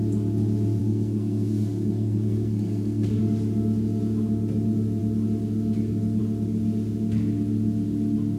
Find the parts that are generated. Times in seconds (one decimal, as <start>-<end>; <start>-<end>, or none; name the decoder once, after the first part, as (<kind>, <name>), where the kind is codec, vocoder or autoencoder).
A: 0.8-3.2 (codec, SNAC)